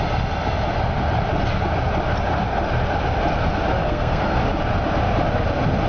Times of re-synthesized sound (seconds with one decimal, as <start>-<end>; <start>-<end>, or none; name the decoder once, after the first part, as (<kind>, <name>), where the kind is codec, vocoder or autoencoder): 3.8-4.4 (codec, SNAC)